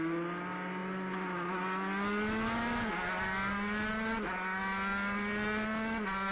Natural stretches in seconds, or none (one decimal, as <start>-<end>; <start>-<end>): 0.0-6.3